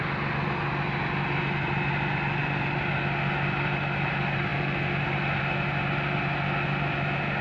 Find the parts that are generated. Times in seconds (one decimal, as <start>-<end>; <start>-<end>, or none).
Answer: none

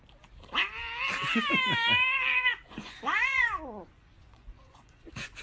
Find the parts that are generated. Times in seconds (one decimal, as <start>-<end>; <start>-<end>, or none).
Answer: 2.5-5.4

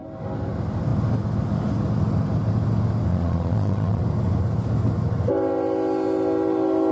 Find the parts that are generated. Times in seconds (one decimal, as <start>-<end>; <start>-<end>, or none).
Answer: 3.1-4.0

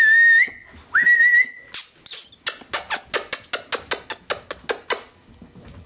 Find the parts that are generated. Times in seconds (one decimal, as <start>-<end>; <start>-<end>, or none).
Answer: none